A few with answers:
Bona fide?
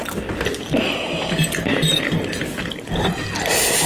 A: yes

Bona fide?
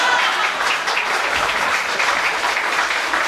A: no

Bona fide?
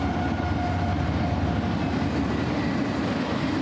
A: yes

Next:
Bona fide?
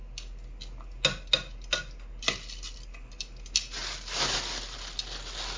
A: yes